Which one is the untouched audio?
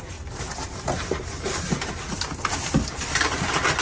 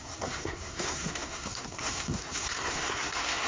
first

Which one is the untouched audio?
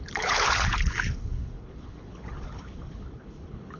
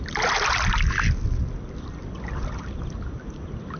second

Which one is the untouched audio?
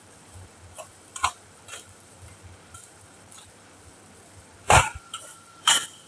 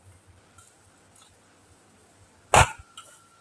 second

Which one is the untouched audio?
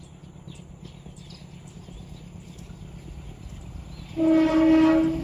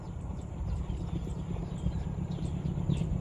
first